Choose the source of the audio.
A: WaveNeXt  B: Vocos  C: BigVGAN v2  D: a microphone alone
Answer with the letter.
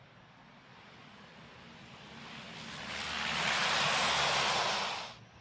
D